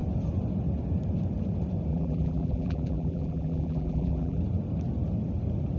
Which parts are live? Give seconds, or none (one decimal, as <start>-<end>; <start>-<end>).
0.0-1.9; 4.4-5.8